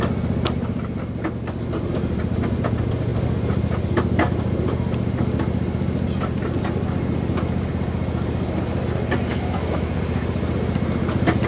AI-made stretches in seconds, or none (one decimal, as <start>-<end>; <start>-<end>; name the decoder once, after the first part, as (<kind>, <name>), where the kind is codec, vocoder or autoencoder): 9.3-9.9 (autoencoder, DAC-VAE)